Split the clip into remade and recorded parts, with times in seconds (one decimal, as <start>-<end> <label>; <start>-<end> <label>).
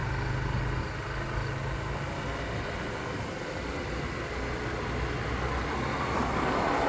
0.0-6.9 recorded